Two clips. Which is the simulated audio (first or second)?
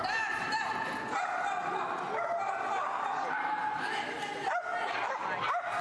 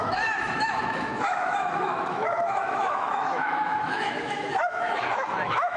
second